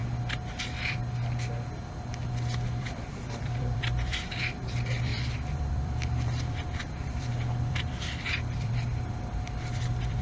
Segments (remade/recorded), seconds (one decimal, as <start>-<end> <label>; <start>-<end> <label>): 0.0-0.5 recorded; 0.5-1.0 remade; 1.0-2.8 recorded; 2.8-10.2 remade

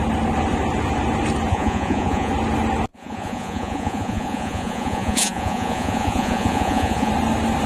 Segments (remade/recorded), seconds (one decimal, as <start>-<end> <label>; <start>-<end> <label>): 0.0-1.5 recorded; 1.5-2.3 remade; 2.3-2.9 recorded; 2.9-7.1 remade; 7.1-7.7 recorded

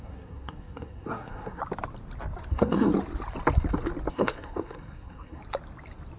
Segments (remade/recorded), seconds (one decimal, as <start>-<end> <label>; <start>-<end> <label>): 0.0-1.6 remade; 1.6-2.5 recorded; 2.5-2.9 remade; 2.9-4.1 recorded; 4.1-5.4 remade; 5.4-6.2 recorded

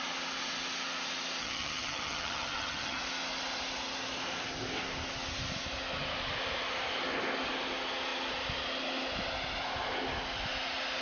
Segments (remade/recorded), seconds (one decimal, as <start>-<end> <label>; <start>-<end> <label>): 0.0-1.4 recorded; 1.4-3.0 remade; 3.0-11.0 recorded

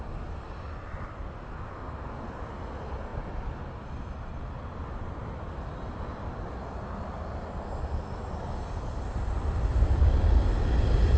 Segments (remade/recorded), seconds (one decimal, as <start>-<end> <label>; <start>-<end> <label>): 0.0-11.2 recorded

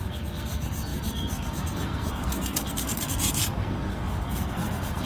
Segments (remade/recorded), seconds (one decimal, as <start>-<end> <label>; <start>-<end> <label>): 0.0-5.1 remade

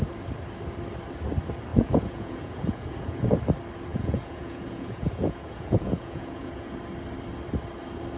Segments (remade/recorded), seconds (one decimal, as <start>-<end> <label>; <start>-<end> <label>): 0.0-1.7 recorded; 1.7-3.4 remade; 3.4-3.9 recorded; 3.9-6.8 remade; 6.8-8.2 recorded